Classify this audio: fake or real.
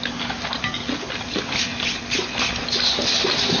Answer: real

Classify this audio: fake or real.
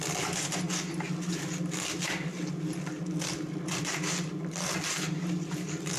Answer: real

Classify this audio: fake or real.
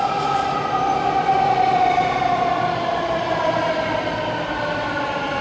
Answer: real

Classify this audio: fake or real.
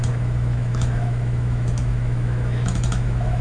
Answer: fake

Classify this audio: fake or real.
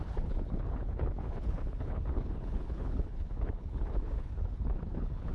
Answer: fake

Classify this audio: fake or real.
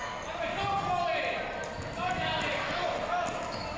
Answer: real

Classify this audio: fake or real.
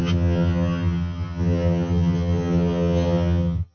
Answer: fake